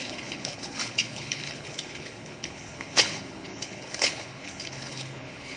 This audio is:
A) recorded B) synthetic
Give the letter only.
B